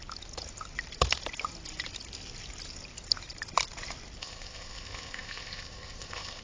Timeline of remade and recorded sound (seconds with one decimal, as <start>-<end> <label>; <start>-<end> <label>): 0.0-4.2 recorded; 4.2-6.4 remade